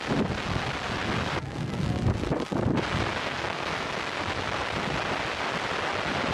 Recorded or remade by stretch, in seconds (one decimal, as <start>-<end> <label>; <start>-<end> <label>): 0.0-3.2 recorded; 3.2-3.9 remade; 3.9-6.3 recorded